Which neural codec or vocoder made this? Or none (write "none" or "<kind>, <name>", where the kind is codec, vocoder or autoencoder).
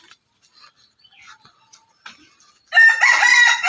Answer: none